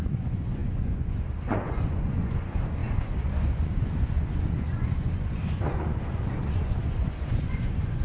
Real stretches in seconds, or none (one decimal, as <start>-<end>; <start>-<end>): none

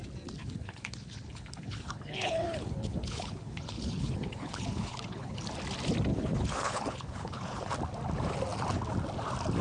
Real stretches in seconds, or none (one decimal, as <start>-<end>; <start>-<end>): 0.0-0.4; 5.4-6.1; 7.7-9.6

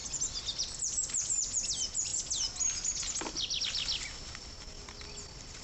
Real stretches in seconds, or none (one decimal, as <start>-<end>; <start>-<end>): 0.0-5.6

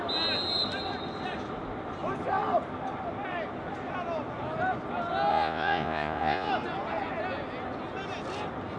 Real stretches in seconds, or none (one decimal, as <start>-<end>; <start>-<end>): 0.0-5.3; 6.5-8.8

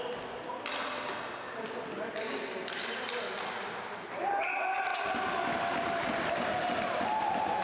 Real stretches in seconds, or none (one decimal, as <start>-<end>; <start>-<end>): 0.0-7.6